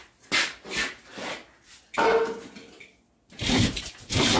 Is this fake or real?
real